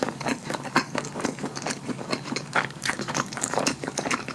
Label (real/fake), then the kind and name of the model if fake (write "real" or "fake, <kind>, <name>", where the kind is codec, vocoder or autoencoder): fake, codec, DAC